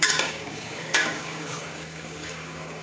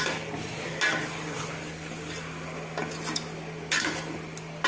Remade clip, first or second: first